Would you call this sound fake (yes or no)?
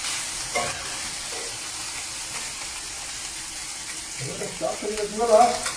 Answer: no